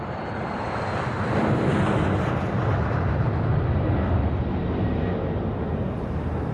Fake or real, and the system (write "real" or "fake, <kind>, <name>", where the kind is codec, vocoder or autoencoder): real